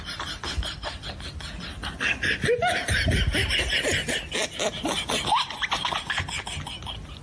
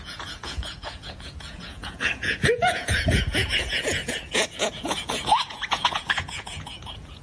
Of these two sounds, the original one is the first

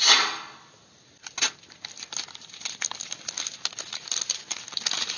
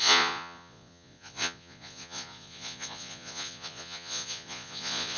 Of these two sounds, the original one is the first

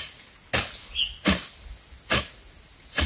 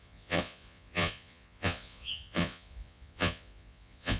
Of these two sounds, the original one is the first